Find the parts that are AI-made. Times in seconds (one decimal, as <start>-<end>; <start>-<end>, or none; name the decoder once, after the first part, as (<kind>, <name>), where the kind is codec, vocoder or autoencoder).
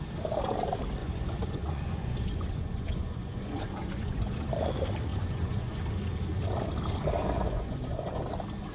1.0-4.5 (vocoder, Vocos); 5.1-5.8; 7.2-8.2